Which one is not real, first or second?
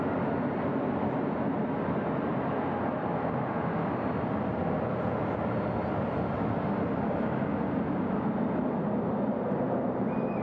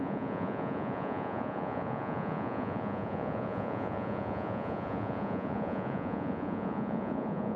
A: second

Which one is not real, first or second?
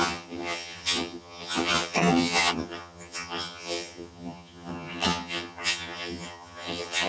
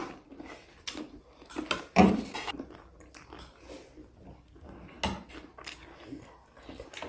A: first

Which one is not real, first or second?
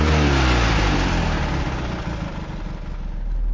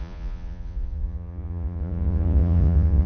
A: second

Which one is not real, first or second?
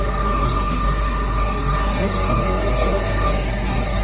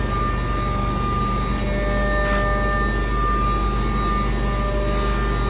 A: first